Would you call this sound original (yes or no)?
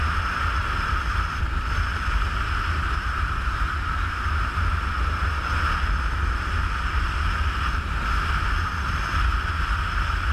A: yes